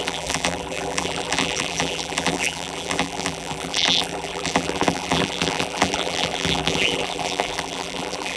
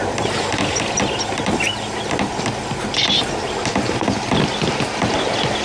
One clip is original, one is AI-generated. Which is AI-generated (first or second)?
first